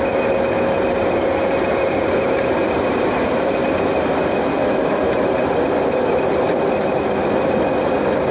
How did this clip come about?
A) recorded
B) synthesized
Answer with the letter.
A